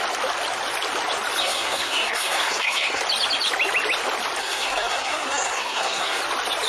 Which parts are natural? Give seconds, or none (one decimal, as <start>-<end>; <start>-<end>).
0.0-1.4; 3.0-4.4; 6.2-6.7